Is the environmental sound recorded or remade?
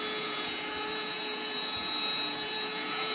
remade